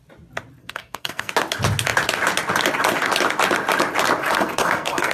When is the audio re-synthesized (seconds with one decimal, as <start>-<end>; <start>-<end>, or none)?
0.6-1.3; 4.2-5.1